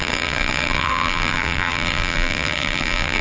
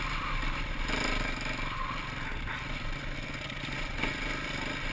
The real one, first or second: second